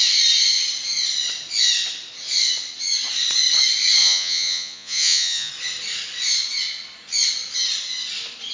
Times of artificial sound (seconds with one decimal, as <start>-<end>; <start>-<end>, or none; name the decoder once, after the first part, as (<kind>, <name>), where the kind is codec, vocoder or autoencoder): 4.0-5.5 (vocoder, Vocos)